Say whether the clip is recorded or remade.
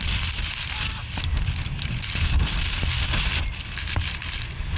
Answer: recorded